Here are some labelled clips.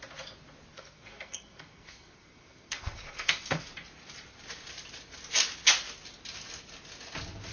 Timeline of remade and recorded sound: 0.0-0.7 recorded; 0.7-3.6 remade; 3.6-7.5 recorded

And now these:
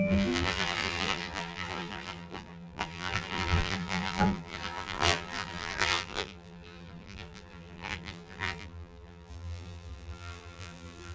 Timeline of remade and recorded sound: 0.0-11.1 remade

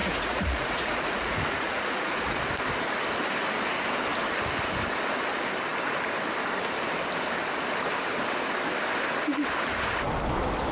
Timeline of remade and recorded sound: 0.0-2.5 remade; 2.5-10.7 recorded

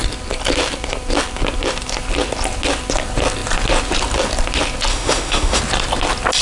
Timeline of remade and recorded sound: 0.0-4.9 recorded; 4.9-5.6 remade; 5.6-6.4 recorded

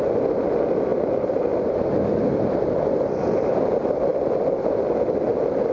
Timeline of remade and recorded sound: 0.0-5.7 recorded

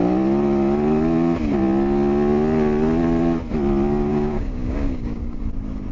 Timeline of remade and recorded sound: 0.0-4.1 recorded; 4.1-5.4 remade; 5.4-5.9 recorded